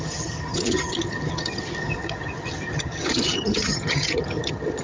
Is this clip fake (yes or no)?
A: yes